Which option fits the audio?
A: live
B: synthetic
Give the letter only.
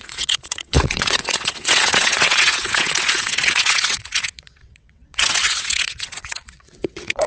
B